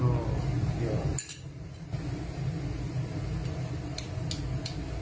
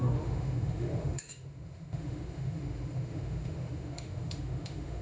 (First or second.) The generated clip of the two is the second